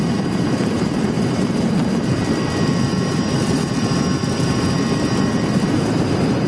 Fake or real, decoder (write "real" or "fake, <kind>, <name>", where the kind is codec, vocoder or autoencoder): fake, vocoder, BigVGAN v2